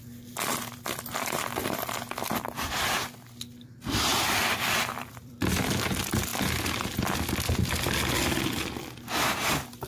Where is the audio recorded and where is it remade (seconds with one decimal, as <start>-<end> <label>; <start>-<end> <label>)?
0.0-1.1 recorded; 1.1-1.9 remade; 1.9-4.1 recorded; 4.1-5.3 remade; 5.3-6.3 recorded; 6.3-7.0 remade; 7.0-9.9 recorded